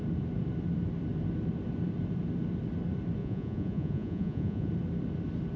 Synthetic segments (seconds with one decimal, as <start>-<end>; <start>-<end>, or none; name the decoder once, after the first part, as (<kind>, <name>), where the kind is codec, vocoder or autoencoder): 3.2-4.7 (vocoder, Vocos)